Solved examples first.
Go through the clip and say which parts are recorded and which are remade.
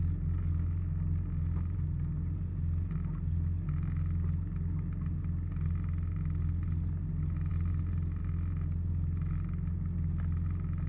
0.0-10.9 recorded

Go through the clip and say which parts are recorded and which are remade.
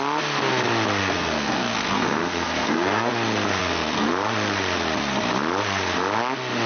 0.0-1.0 recorded; 1.0-3.1 remade; 3.1-3.6 recorded; 3.6-4.1 remade; 4.1-6.7 recorded